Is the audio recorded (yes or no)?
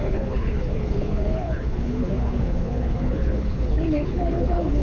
no